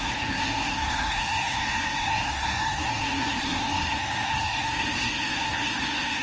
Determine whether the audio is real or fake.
fake